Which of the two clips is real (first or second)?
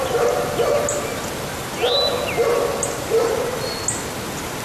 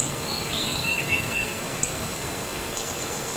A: first